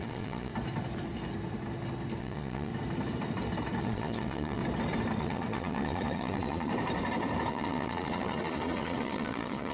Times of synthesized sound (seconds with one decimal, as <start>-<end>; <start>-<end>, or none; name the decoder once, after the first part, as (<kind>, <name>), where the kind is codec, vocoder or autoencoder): 0.0-0.5 (vocoder, Vocos); 2.2-2.7; 3.8-4.6; 5.2-6.7; 7.5-9.7